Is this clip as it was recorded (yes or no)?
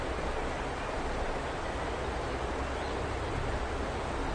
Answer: yes